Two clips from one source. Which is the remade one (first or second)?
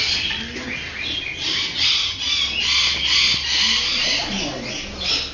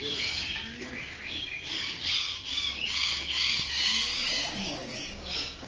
second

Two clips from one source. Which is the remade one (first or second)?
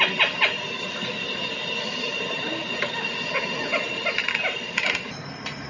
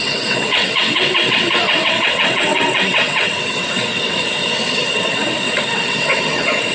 second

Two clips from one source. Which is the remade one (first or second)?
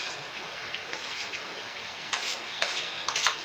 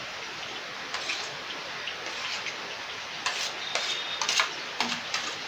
first